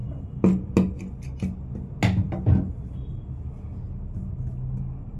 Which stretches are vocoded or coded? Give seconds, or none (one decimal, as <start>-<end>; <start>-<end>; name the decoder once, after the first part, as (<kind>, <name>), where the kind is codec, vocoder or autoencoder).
none